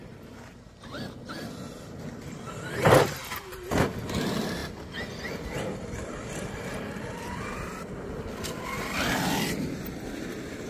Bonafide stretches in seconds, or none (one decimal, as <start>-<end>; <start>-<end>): 0.0-10.7